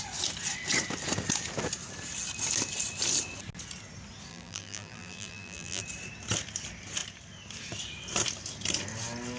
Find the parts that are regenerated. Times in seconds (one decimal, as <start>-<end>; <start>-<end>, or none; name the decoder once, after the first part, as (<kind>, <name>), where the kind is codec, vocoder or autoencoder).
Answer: 4.3-5.8 (vocoder, BigVGAN v2)